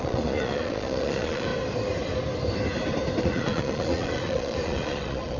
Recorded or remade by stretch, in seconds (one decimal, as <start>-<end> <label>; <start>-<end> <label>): 0.0-1.5 remade; 1.5-3.2 recorded; 3.2-5.4 remade